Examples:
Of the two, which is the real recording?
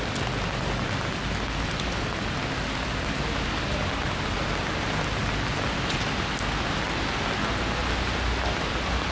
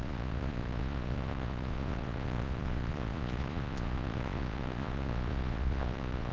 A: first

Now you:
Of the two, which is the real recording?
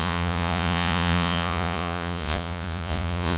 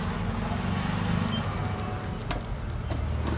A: second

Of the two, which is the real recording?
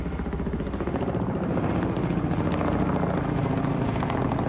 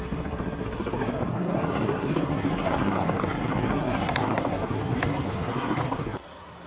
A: first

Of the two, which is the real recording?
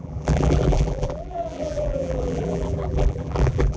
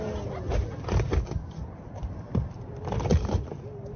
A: second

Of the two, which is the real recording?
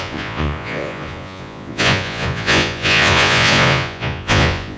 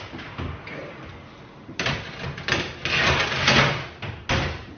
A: second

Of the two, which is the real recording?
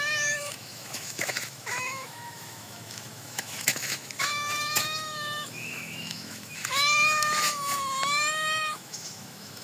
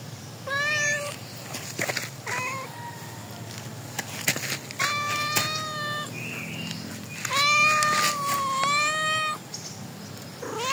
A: second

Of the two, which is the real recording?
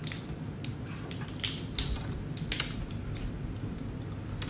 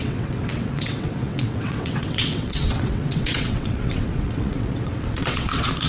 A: first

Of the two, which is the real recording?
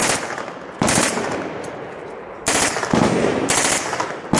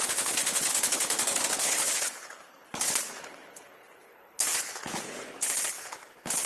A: first